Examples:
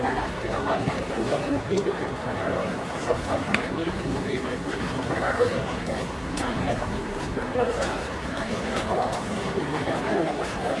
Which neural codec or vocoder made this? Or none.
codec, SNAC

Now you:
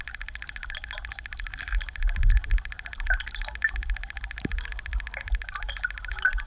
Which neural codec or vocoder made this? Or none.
none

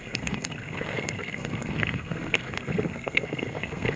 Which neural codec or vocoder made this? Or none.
codec, SNAC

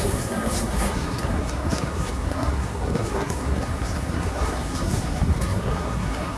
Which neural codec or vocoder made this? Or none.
codec, SNAC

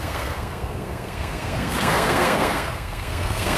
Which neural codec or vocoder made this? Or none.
codec, SNAC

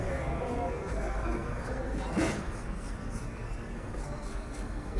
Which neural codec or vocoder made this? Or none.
codec, SNAC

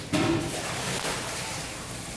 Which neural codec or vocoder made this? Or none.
none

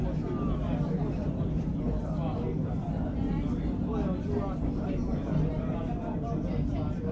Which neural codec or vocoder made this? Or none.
none